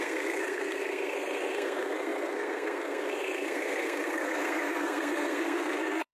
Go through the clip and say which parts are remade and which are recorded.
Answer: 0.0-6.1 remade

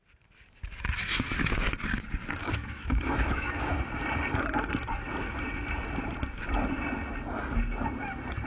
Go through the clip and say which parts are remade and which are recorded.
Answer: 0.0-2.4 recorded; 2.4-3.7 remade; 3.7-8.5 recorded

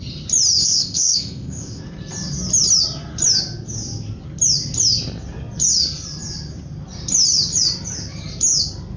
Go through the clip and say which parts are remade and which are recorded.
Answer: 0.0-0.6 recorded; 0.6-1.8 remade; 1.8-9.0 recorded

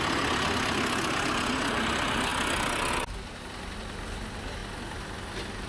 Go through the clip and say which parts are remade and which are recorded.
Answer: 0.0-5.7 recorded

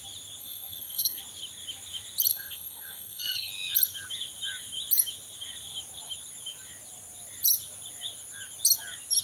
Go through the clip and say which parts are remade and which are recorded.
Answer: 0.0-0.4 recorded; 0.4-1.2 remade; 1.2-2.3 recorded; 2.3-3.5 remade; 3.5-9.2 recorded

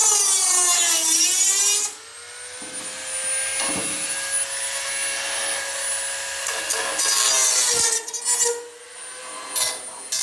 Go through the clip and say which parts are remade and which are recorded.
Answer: 0.0-10.2 recorded

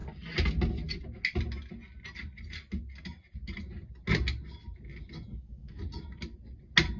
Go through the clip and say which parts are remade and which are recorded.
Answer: 0.0-5.3 recorded; 5.3-5.8 remade; 5.8-7.0 recorded